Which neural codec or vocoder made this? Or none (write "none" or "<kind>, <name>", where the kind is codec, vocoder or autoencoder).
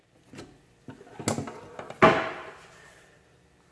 none